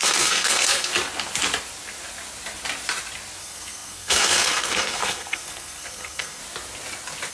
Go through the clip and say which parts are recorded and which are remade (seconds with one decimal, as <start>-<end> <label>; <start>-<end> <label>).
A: 0.0-0.9 remade; 0.9-3.4 recorded; 3.4-6.4 remade; 6.4-7.3 recorded

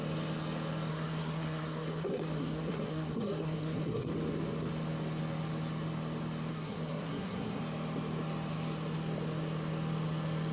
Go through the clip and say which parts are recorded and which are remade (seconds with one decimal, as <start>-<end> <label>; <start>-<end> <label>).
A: 0.0-0.9 recorded; 0.9-4.1 remade; 4.1-6.5 recorded; 6.5-7.6 remade; 7.6-10.5 recorded

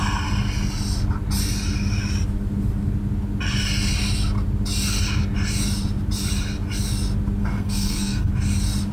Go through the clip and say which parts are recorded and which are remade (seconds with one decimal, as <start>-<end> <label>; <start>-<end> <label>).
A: 0.0-7.4 recorded; 7.4-8.3 remade; 8.3-8.9 recorded

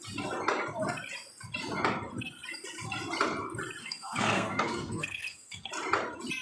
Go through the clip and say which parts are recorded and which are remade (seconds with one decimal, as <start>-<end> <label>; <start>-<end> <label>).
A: 0.0-3.8 recorded; 3.8-5.7 remade; 5.7-6.4 recorded

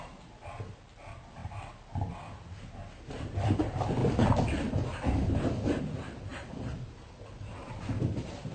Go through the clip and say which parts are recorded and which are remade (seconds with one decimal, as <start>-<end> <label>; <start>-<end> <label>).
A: 0.0-8.5 recorded